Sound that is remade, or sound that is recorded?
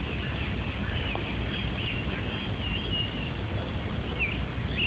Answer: recorded